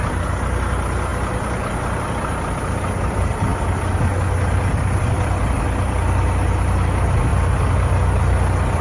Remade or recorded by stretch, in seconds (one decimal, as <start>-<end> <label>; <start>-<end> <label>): 0.0-8.8 recorded